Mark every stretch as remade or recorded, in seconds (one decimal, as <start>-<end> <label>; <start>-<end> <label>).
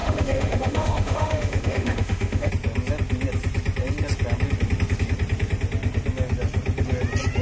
0.0-2.5 remade; 2.5-7.4 recorded